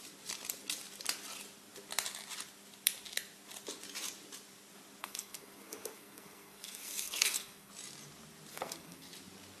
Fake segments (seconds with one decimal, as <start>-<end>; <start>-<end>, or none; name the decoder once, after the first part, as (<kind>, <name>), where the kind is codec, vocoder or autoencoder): 5.0-7.7 (codec, SNAC); 8.5-9.1

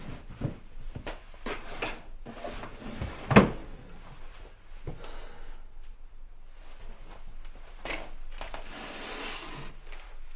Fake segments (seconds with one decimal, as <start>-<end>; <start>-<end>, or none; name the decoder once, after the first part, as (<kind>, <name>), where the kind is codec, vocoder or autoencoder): 3.6-4.3 (vocoder, BigVGAN v2)

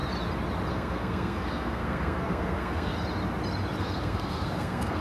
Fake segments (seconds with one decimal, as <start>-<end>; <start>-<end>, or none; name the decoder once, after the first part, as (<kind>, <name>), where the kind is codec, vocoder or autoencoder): 0.7-2.9 (codec, SNAC); 3.8-5.0

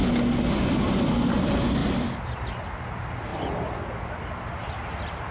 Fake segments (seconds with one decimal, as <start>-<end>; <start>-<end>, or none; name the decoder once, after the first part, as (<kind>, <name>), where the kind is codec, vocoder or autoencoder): 1.8-2.4 (vocoder, BigVGAN v2); 3.3-4.1

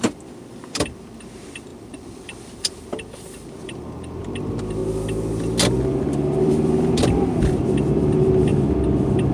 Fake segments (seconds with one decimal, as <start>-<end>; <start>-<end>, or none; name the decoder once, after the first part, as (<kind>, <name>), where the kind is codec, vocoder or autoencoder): 0.0-4.8 (vocoder, BigVGAN v2); 6.4-8.5

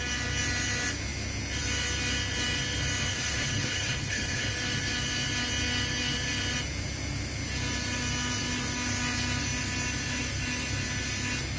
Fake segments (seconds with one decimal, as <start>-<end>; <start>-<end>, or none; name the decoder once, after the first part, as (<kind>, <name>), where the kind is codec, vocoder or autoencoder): 3.1-4.5 (codec, HILCodec)